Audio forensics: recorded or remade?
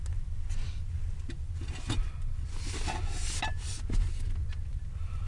recorded